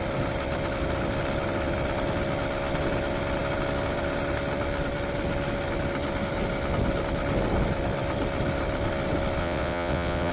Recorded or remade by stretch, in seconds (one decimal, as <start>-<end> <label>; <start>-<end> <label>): 0.0-9.4 recorded; 9.4-10.3 remade